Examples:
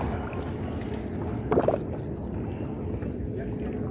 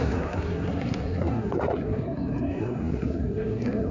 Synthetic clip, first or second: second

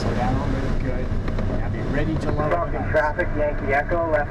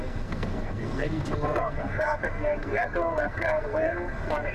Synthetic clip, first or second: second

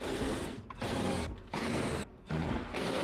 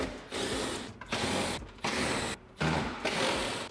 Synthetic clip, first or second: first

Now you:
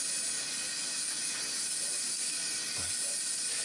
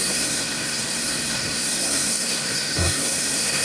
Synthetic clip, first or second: second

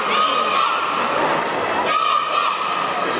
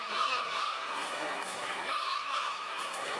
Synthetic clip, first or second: second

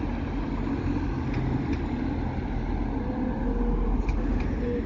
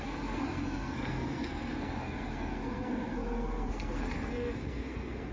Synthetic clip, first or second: second